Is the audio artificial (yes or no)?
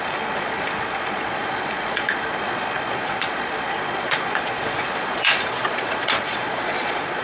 yes